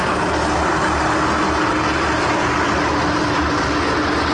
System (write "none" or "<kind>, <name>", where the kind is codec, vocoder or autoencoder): none